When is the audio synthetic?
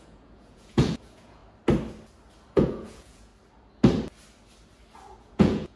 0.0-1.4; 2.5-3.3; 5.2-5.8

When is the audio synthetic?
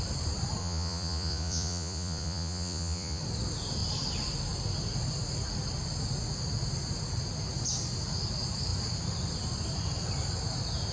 0.6-3.2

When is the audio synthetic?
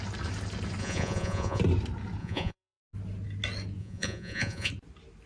0.8-1.6; 2.2-2.8; 3.8-4.7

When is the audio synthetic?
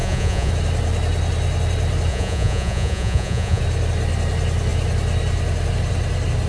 0.0-0.5; 2.1-3.6